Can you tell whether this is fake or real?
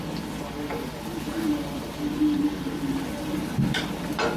fake